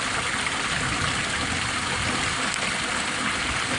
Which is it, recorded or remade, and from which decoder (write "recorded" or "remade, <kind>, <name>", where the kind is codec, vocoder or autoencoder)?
recorded